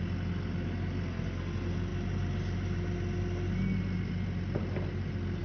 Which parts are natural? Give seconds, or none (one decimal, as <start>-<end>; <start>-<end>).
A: 0.0-5.4